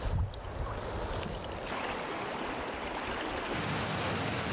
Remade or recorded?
recorded